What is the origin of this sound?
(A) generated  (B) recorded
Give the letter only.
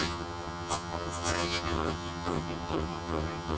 A